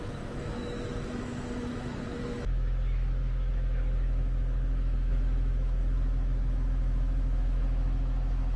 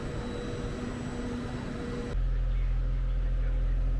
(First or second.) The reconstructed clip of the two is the first